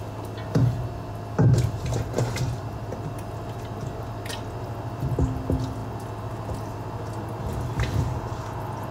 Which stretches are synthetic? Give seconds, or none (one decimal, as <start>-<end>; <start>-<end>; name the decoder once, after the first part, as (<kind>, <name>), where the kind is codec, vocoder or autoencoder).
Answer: none